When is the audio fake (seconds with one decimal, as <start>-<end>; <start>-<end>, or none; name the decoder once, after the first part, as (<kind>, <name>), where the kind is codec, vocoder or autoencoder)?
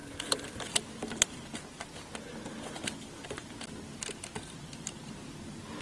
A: none